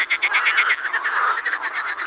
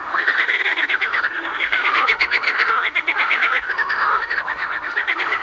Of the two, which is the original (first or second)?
first